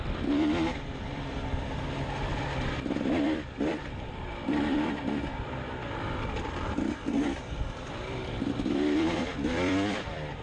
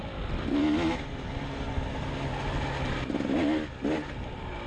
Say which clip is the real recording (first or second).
second